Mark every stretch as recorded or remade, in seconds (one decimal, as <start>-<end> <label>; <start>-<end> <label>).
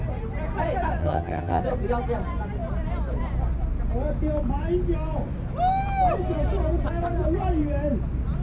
0.0-1.0 recorded; 1.0-1.6 remade; 1.6-8.4 recorded